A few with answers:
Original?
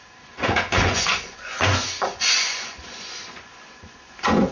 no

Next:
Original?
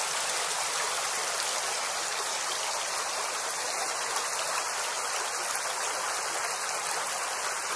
yes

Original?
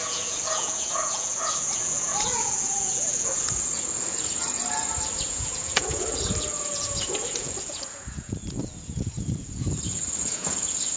no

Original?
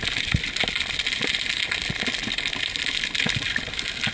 yes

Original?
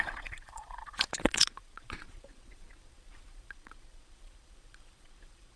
no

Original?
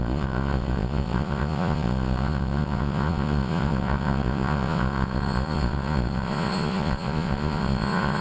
no